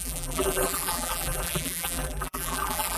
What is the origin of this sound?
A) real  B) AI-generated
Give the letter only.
B